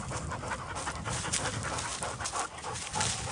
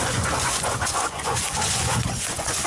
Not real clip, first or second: second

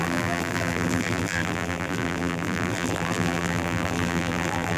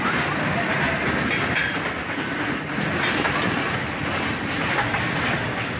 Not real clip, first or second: first